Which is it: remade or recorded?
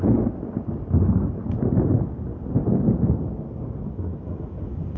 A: recorded